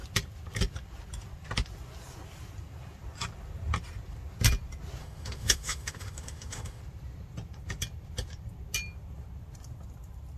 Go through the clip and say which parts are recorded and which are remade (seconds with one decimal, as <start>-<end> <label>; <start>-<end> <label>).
0.0-5.0 recorded; 5.0-6.8 remade; 6.8-10.4 recorded